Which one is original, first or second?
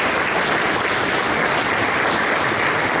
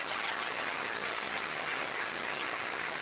first